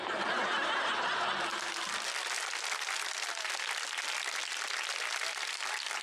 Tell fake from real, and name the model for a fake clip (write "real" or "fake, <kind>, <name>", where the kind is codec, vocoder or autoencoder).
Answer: real